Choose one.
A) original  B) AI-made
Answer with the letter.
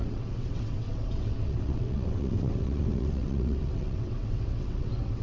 B